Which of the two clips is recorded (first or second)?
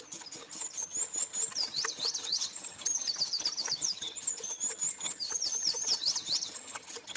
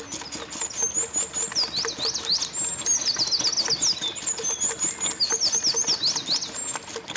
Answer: second